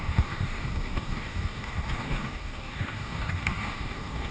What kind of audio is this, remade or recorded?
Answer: remade